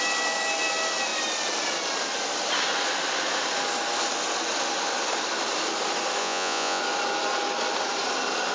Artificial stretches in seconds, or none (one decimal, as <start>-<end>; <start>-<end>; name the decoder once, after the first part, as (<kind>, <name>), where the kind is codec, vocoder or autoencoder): 6.2-6.8 (vocoder, Vocos)